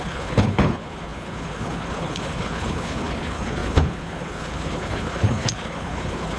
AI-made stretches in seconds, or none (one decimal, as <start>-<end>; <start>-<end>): 0.0-6.4